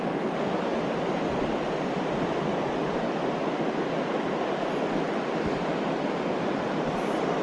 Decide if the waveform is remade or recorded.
recorded